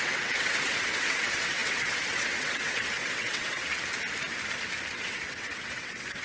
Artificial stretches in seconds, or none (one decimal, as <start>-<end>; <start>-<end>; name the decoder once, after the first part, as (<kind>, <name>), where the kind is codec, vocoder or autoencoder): 0.0-3.6 (vocoder, WaveNeXt); 4.9-6.2